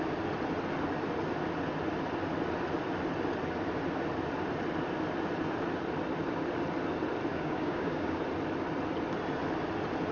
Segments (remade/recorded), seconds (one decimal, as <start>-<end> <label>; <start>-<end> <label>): 0.0-7.3 recorded; 7.3-8.2 remade; 8.2-10.1 recorded